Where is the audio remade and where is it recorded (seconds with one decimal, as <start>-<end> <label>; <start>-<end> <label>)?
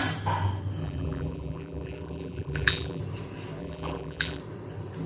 0.0-0.8 recorded; 0.8-3.0 remade; 3.0-3.6 recorded; 3.6-4.4 remade; 4.4-5.1 recorded